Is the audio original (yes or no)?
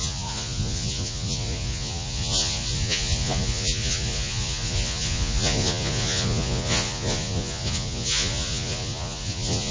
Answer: no